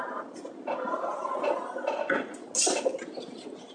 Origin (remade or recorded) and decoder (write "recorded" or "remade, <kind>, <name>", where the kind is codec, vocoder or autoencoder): recorded